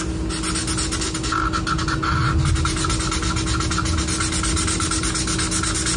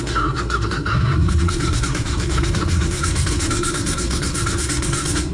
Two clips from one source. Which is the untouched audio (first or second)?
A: first